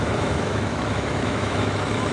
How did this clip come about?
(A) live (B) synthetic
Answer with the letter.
B